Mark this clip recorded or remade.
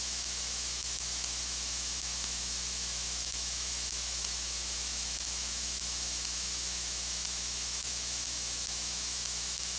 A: remade